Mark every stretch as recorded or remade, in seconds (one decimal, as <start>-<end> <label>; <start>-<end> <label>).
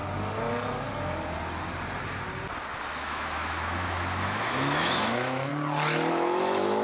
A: 0.0-2.8 recorded; 2.8-5.5 remade; 5.5-6.1 recorded; 6.1-6.8 remade